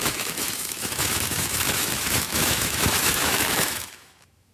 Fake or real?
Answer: fake